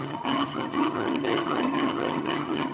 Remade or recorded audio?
remade